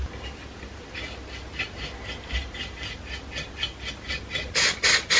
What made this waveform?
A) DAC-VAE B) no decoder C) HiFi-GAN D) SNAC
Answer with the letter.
B